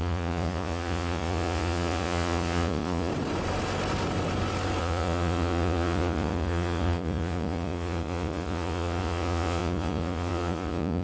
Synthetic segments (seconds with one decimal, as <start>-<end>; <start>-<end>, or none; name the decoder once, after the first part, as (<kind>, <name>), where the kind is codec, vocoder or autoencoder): 0.0-3.1 (vocoder, Vocos); 4.8-11.0